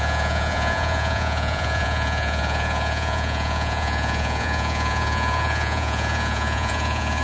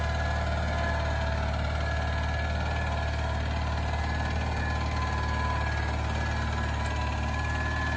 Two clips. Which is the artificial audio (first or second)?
first